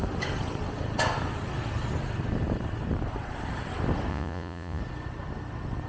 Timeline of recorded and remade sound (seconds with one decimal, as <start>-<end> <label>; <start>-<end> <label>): 0.0-4.1 recorded; 4.1-4.8 remade; 4.8-5.9 recorded